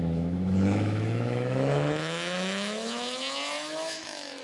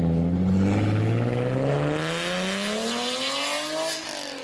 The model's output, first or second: first